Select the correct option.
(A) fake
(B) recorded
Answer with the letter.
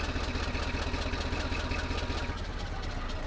B